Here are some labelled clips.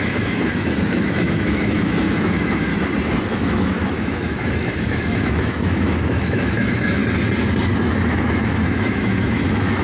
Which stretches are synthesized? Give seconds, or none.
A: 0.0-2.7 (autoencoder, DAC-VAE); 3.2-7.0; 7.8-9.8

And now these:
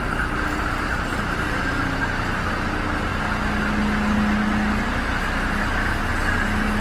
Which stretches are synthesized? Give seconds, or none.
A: none

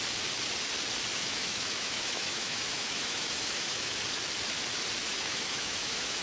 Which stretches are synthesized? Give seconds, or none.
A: 1.1-4.0 (autoencoder, DAC-VAE); 5.1-6.2

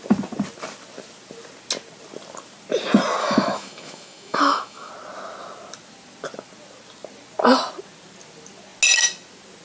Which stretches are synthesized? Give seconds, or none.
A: 3.2-4.9 (autoencoder, DAC-VAE)

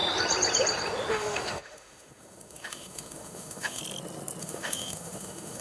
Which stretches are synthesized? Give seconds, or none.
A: 1.1-3.8 (autoencoder, DAC-VAE); 4.4-5.6

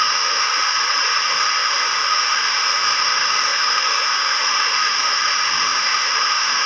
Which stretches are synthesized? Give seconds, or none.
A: 0.0-0.5 (autoencoder, DAC-VAE); 1.2-6.7

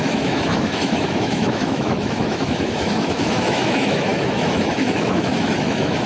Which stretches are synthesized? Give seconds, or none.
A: 0.0-6.1 (autoencoder, DAC-VAE)

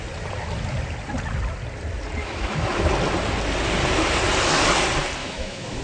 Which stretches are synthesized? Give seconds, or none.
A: 2.2-2.9 (autoencoder, DAC-VAE); 5.2-5.8